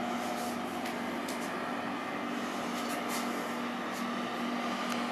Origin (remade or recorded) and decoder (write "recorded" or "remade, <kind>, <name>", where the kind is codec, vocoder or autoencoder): recorded